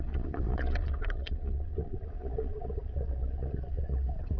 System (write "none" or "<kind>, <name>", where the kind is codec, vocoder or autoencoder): vocoder, Vocos